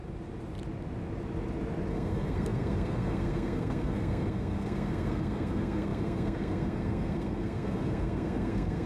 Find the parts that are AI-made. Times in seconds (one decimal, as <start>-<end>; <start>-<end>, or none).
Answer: 1.9-8.9